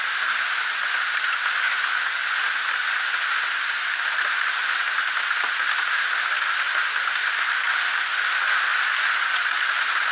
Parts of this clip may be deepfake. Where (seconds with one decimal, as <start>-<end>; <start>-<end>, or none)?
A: none